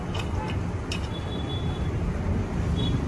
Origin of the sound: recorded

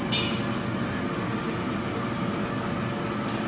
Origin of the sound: recorded